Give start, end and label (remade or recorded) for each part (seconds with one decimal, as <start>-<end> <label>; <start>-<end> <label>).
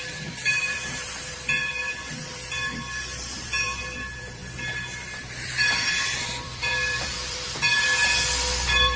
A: 0.0-4.4 remade; 4.4-5.2 recorded; 5.2-9.0 remade